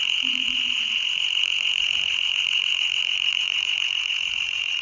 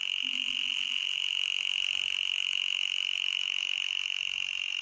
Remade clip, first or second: first